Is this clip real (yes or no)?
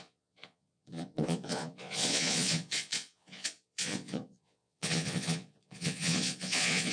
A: no